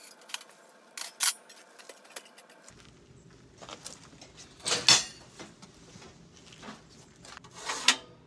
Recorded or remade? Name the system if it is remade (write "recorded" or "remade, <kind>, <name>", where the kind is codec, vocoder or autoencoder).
recorded